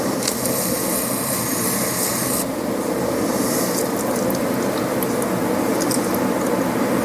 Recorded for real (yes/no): yes